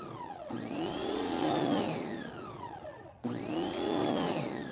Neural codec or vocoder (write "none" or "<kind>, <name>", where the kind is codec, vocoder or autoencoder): vocoder, Vocos